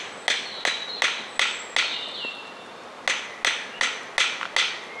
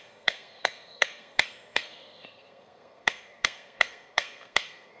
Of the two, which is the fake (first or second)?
second